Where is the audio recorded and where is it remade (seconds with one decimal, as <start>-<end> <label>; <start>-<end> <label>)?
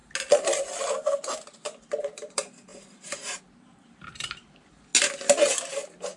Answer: 0.0-2.0 recorded; 2.0-4.9 remade; 4.9-5.4 recorded; 5.4-6.2 remade